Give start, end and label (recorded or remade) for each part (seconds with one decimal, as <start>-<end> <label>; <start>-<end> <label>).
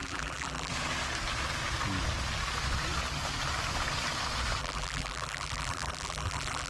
0.0-0.7 remade; 0.7-4.6 recorded; 4.6-6.7 remade